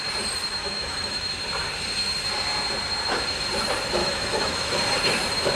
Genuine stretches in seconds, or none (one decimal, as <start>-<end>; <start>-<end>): 0.0-0.6; 1.3-4.0; 4.8-5.6